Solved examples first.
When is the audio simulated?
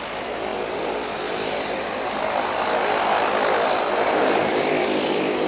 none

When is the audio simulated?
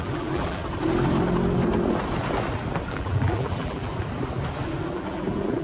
0.0-0.6 (vocoder, BigVGAN v2); 2.9-3.9; 4.9-5.6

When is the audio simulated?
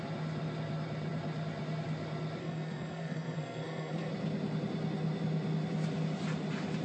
2.4-4.1 (codec, SNAC)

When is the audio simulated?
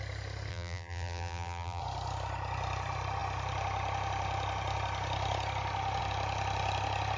0.5-1.8 (vocoder, BigVGAN v2)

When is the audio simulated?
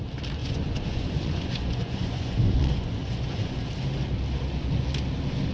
0.4-3.7 (vocoder, Vocos)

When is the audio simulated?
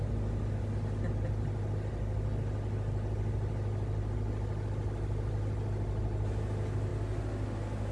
none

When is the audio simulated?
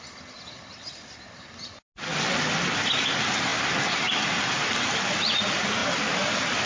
none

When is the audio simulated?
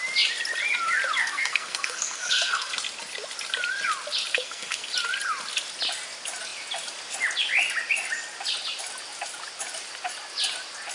1.2-2.7 (codec, SNAC); 4.3-4.9